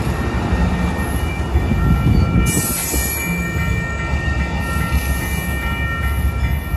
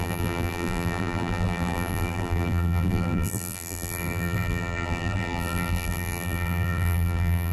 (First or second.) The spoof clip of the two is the second